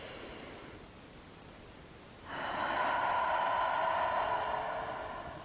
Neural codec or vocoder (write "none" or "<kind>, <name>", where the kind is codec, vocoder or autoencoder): none